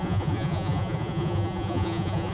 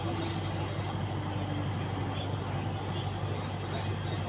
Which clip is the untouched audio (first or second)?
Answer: second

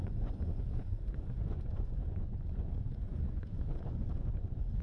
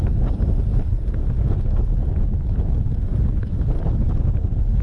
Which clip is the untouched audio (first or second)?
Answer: second